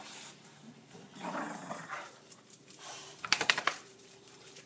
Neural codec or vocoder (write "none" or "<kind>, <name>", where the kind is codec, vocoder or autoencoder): vocoder, BigVGAN v2